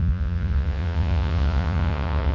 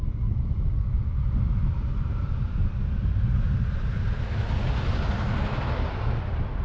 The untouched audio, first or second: second